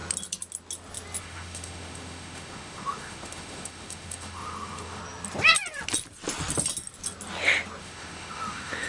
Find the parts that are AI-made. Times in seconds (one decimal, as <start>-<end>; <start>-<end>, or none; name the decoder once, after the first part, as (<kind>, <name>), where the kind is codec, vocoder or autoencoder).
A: 1.2-5.0 (autoencoder, DAC-VAE); 7.8-8.9